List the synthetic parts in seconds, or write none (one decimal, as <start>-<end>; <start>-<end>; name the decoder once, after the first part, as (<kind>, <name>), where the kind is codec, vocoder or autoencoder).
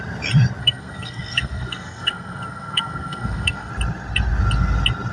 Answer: 0.6-3.7 (codec, SNAC)